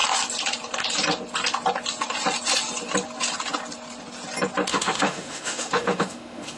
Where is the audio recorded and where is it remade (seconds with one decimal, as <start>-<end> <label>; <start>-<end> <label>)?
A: 0.0-4.7 recorded; 4.7-6.6 remade